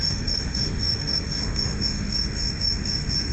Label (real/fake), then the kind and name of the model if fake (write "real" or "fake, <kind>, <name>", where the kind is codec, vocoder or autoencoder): fake, autoencoder, DAC-VAE